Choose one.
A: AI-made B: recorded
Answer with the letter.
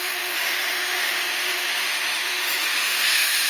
A